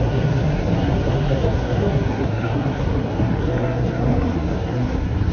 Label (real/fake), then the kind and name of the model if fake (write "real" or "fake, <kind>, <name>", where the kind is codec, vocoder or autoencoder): fake, codec, SNAC